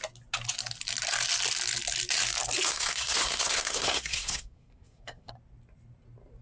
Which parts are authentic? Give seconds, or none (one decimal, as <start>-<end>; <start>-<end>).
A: 0.0-2.7; 5.3-6.4